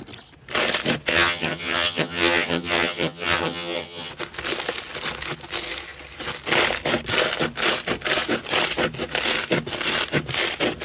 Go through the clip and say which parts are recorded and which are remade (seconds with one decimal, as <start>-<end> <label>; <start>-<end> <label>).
0.0-1.1 recorded; 1.1-4.1 remade; 4.1-10.8 recorded